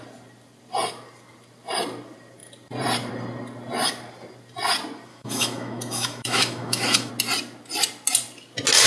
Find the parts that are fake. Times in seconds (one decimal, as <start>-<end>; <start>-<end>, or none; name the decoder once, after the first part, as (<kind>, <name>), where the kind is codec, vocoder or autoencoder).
5.1-7.1 (autoencoder, DAC-VAE)

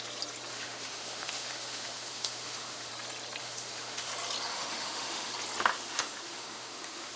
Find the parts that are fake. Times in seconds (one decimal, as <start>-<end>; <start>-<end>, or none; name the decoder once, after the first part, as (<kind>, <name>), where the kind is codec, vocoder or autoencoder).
0.5-2.9 (autoencoder, DAC-VAE); 3.4-4.1; 4.5-5.3; 5.7-7.2

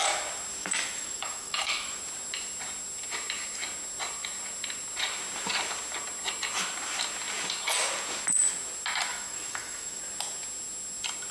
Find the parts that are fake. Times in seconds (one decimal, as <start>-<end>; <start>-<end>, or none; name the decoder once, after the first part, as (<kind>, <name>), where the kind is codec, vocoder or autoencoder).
0.6-2.0 (autoencoder, DAC-VAE); 9.1-10.0

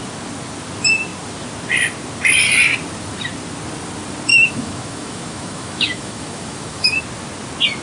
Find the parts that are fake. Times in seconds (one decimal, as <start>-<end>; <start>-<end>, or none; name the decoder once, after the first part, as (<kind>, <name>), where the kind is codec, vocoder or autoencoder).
4.3-7.0 (autoencoder, DAC-VAE)

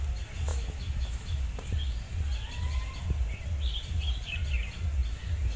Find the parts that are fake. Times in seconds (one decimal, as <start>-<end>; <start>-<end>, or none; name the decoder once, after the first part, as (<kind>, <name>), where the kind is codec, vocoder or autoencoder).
0.5-1.4 (autoencoder, DAC-VAE)

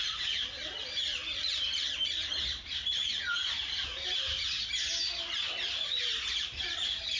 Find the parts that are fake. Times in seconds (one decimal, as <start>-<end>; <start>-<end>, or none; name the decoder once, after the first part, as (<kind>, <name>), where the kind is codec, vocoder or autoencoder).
none